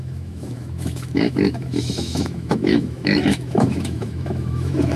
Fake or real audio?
fake